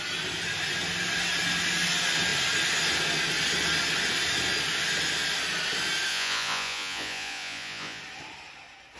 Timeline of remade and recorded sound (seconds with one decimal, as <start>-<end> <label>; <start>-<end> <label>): 0.0-6.1 recorded; 6.1-8.0 remade; 8.0-9.0 recorded